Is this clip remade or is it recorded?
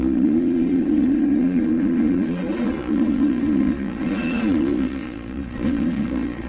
remade